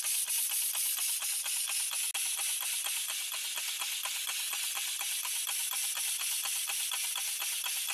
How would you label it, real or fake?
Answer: real